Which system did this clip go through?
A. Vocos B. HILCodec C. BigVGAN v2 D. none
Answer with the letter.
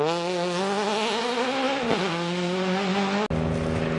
D